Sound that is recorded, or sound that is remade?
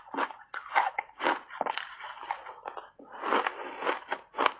recorded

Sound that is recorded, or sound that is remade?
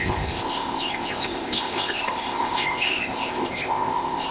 remade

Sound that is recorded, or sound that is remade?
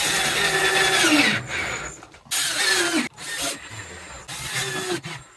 recorded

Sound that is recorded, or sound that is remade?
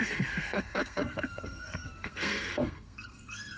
remade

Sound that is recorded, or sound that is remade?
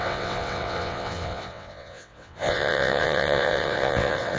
remade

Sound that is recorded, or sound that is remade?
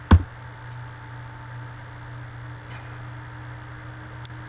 recorded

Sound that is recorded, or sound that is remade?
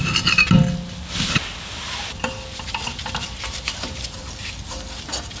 recorded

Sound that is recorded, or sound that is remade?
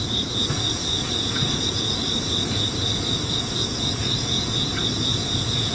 remade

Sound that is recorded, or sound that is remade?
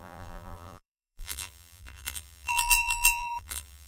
remade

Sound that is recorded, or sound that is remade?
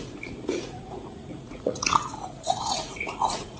remade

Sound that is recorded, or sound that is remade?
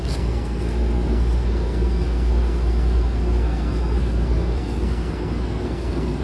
remade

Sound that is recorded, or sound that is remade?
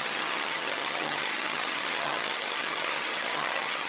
remade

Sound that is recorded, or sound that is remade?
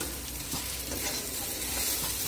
recorded